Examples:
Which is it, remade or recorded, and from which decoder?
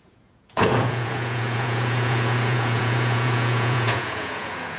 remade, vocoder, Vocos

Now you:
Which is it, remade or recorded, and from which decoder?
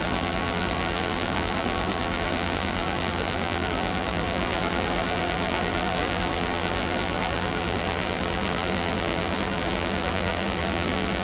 remade, vocoder, BigVGAN v2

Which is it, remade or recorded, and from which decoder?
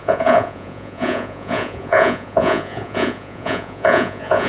remade, vocoder, Vocos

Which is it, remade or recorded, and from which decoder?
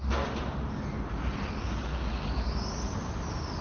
recorded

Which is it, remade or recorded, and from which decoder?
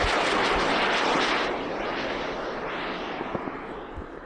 recorded